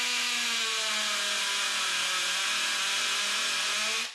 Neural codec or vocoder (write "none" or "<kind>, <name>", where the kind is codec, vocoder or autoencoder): none